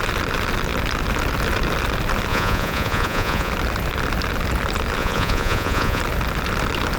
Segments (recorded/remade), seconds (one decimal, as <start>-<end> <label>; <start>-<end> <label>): 0.0-2.3 recorded; 2.3-3.5 remade; 3.5-5.0 recorded; 5.0-6.0 remade; 6.0-7.0 recorded